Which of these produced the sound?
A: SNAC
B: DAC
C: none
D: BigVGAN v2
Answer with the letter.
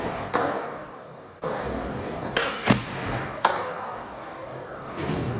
B